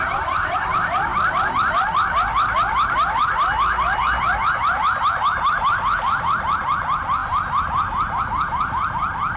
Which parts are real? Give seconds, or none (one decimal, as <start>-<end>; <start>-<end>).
0.0-9.4